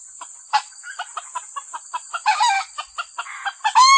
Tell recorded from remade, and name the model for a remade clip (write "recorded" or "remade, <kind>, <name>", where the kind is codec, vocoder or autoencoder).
recorded